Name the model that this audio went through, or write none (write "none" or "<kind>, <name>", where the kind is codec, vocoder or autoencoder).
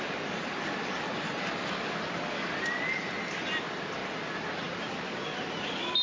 none